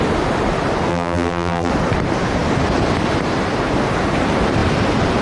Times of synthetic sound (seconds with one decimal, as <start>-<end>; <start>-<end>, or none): 0.9-1.7